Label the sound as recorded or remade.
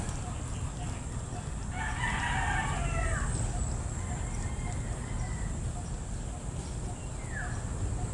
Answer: recorded